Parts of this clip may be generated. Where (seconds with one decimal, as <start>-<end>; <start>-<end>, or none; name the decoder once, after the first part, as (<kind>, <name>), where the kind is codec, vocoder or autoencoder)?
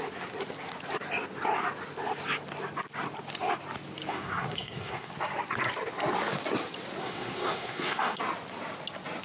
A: 4.1-5.1 (codec, SNAC); 7.0-8.2